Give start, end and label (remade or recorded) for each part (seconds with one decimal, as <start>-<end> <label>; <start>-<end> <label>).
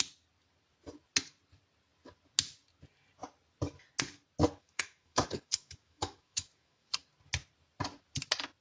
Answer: 0.0-4.6 recorded; 4.6-6.9 remade; 6.9-8.6 recorded